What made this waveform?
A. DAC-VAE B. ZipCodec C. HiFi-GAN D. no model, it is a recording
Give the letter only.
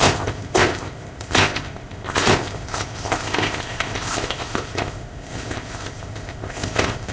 B